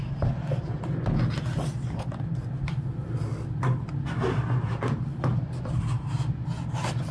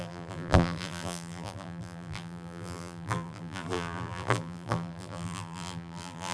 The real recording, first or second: first